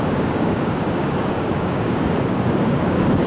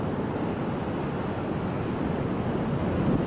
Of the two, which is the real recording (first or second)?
second